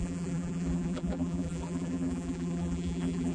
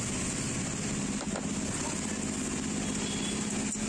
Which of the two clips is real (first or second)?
second